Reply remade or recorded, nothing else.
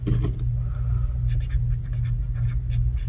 recorded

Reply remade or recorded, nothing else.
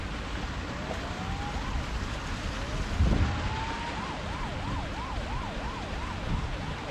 recorded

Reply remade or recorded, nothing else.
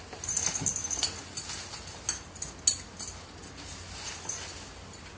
recorded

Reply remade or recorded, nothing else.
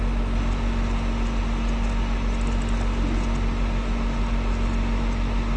recorded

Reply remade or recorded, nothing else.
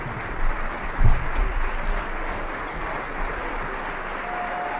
recorded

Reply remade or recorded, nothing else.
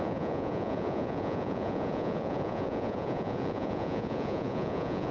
remade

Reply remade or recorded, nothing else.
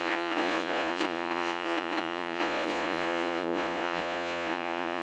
remade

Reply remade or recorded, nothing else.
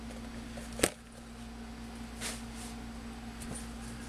recorded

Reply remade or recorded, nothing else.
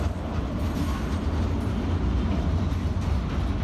recorded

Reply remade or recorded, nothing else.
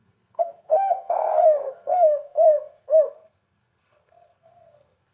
remade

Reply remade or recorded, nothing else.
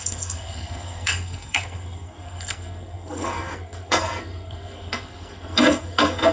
remade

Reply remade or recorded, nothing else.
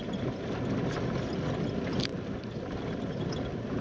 recorded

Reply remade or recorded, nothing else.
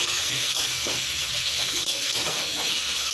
remade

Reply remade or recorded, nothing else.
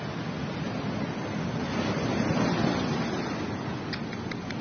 recorded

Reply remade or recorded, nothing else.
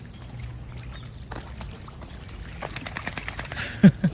recorded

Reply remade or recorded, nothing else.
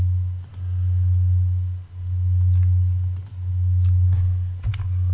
recorded